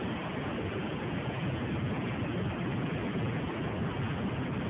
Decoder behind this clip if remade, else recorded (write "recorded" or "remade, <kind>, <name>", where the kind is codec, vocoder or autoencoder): recorded